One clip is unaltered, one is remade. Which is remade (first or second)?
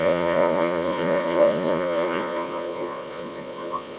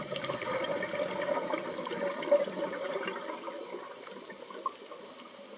first